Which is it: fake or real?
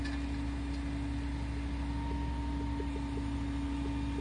real